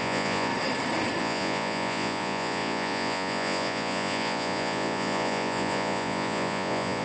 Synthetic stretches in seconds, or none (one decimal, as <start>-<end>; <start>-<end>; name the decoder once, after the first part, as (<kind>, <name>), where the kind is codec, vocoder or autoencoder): 0.0-0.5 (vocoder, Vocos); 1.2-7.0